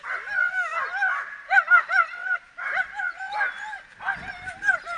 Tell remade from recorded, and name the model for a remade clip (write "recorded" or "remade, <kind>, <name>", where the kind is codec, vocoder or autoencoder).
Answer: recorded